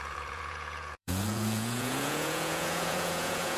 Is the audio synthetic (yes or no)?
yes